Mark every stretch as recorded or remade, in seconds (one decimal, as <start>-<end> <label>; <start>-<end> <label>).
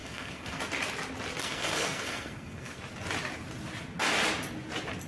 0.0-0.6 remade; 0.6-1.4 recorded; 1.4-2.8 remade; 2.8-5.1 recorded